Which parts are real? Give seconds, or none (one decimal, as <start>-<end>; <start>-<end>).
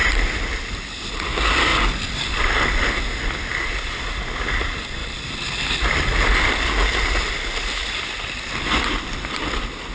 0.0-1.7; 2.5-5.0; 6.8-9.9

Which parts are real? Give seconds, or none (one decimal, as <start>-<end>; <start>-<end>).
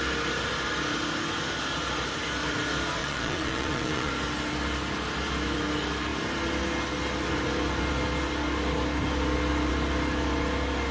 0.0-3.0; 4.1-10.9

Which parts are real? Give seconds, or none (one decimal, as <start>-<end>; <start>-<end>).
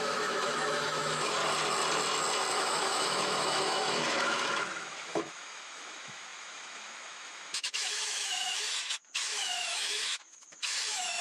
1.4-2.5